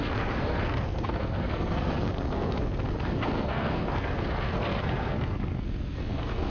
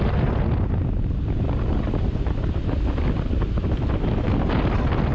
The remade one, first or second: first